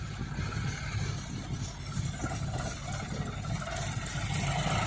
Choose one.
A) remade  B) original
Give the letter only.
B